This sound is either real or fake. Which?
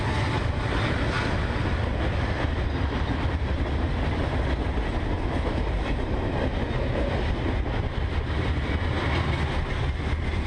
real